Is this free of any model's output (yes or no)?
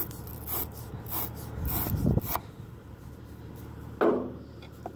yes